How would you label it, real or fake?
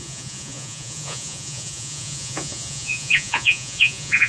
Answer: fake